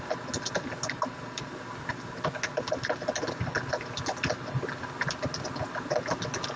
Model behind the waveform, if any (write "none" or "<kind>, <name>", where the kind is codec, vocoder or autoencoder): none